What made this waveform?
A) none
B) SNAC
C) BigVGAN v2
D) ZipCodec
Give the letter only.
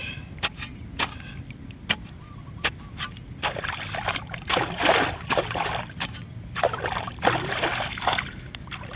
C